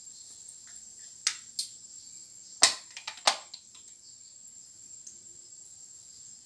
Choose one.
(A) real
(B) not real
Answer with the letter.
A